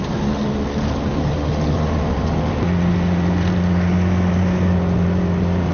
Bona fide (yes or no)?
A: yes